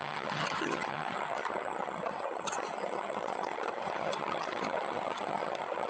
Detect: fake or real fake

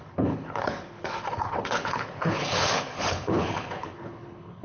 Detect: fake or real fake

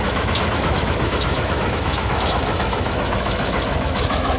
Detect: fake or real fake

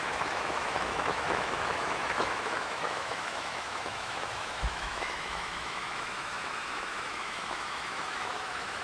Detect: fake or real fake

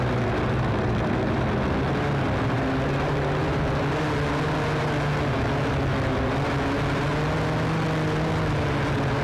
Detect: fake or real real